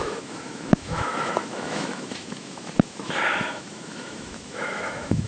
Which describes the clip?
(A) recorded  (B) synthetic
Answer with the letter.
B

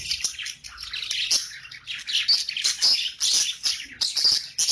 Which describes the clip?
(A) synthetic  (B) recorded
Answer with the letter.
B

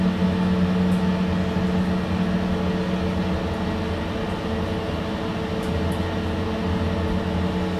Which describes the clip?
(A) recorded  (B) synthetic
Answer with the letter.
A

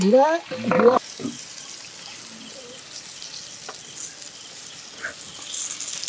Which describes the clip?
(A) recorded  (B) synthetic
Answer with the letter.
A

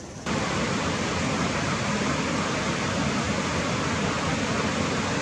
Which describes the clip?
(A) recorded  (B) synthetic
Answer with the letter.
A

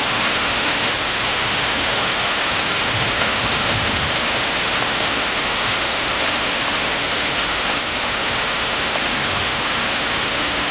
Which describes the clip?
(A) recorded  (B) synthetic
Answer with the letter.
B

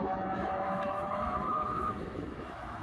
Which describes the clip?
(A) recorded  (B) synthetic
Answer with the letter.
B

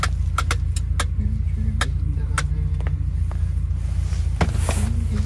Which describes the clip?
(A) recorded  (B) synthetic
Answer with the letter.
A